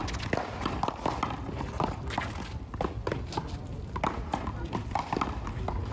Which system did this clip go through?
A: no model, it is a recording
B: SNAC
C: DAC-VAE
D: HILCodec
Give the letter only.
A